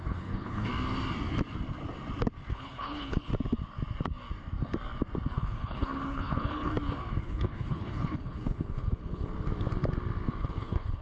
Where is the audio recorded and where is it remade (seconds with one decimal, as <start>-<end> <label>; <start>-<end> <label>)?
0.0-0.7 remade; 0.7-2.5 recorded; 2.5-3.3 remade; 3.3-5.3 recorded; 5.3-6.7 remade; 6.7-7.2 recorded; 7.2-9.3 remade; 9.3-10.4 recorded; 10.4-11.0 remade